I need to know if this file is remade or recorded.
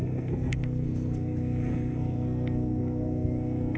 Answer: remade